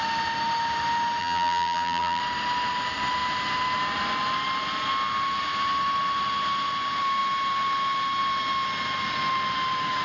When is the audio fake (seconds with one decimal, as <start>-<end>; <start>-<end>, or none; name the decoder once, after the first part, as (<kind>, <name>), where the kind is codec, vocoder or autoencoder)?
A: 1.2-2.2 (vocoder, BigVGAN v2)